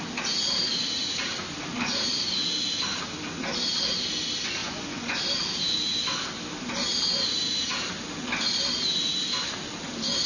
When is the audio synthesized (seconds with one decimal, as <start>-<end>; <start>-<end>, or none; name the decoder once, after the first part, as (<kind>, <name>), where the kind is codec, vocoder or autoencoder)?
4.6-5.2 (vocoder, Vocos)